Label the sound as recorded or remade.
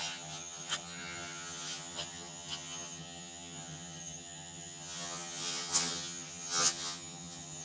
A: remade